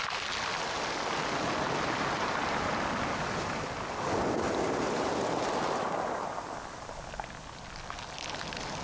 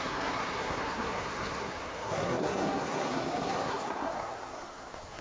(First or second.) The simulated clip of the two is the second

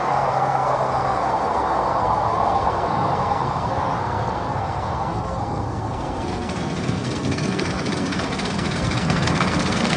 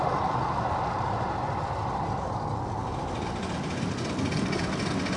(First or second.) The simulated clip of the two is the first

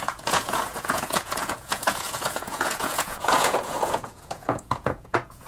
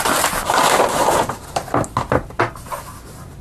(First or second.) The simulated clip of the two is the first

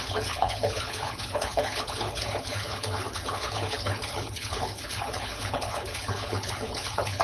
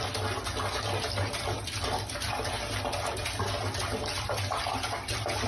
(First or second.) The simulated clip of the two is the first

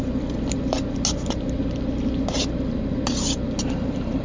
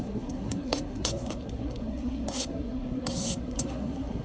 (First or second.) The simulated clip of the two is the second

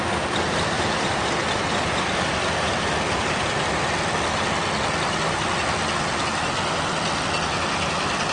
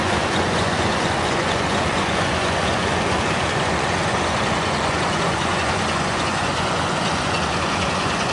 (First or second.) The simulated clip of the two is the second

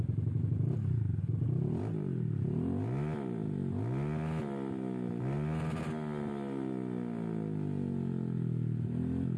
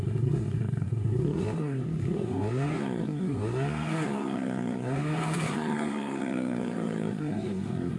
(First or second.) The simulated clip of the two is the second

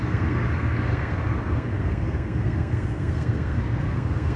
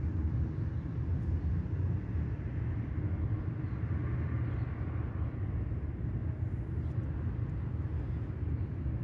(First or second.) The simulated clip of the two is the first